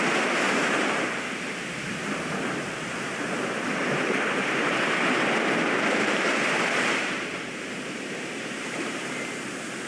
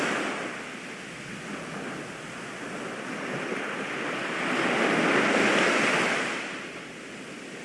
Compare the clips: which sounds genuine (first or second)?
second